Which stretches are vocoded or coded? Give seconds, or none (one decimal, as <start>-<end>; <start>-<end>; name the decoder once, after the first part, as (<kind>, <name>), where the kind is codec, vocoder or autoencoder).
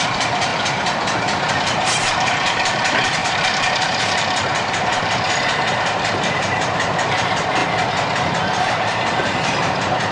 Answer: 0.0-0.5 (vocoder, BigVGAN v2); 1.5-7.6; 8.6-10.1